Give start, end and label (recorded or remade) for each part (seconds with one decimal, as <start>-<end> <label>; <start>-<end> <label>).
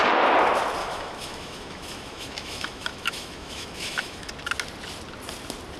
0.0-0.8 recorded; 0.8-4.3 remade; 4.3-5.8 recorded